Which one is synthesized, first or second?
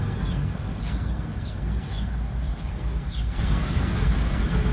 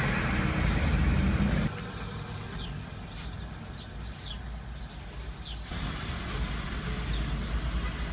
first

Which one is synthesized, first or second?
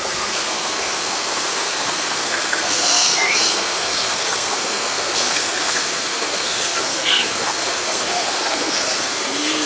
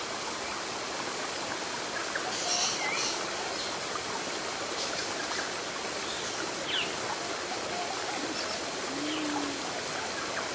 first